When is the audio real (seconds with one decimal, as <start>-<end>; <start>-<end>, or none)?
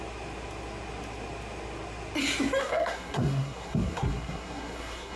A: 0.0-2.6